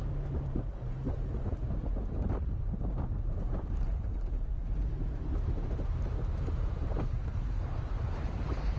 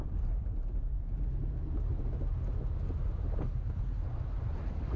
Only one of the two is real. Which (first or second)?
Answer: second